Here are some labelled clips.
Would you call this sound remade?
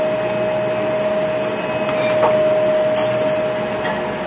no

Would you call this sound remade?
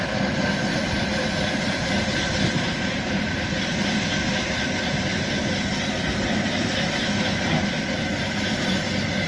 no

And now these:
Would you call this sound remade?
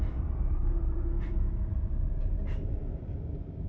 yes